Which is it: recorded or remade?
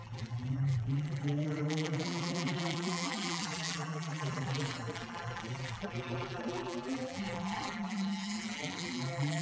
remade